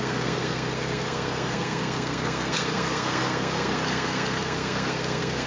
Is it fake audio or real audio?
fake